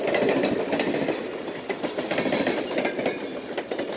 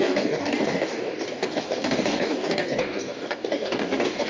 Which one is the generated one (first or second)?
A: second